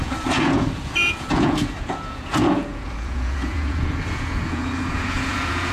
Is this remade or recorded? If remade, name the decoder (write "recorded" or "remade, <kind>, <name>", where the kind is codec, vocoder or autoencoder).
remade, vocoder, Vocos